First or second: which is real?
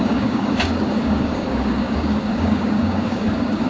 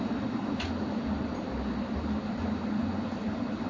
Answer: second